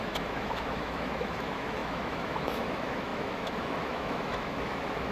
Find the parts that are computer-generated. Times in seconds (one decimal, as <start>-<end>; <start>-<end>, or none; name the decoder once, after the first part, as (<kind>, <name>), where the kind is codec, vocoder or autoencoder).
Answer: 0.0-5.1 (autoencoder, DAC-VAE)